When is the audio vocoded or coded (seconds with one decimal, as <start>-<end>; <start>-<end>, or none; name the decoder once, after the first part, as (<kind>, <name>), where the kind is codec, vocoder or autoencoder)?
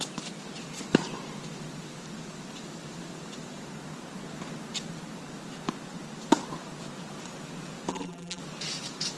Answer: 7.9-8.4 (vocoder, BigVGAN v2)